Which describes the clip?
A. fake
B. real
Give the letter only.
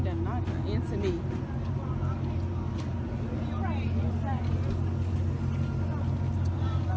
B